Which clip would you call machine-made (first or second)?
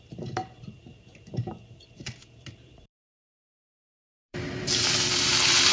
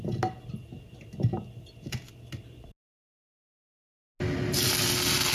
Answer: first